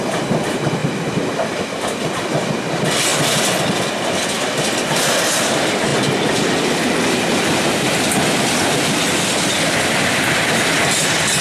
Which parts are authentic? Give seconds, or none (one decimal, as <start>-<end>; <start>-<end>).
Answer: 0.0-0.8; 2.3-3.1; 5.4-11.4